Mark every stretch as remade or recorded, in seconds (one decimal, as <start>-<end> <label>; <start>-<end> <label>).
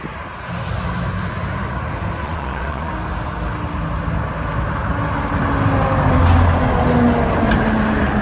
0.0-2.2 recorded; 2.2-2.9 remade; 2.9-8.2 recorded